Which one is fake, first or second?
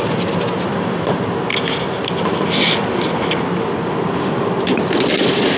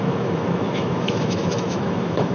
second